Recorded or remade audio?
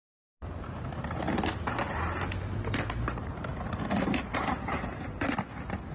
recorded